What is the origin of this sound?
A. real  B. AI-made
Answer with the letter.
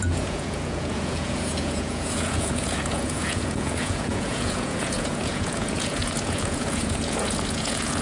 B